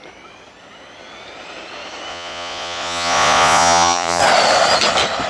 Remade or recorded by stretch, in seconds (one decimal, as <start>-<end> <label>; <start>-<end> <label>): 0.0-2.1 recorded; 2.1-4.2 remade; 4.2-5.3 recorded